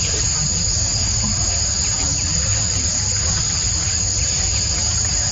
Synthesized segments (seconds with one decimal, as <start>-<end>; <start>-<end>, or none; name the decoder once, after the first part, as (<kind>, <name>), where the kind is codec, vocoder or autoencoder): none